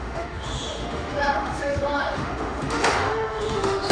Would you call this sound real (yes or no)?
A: no